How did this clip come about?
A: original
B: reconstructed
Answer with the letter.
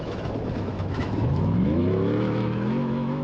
B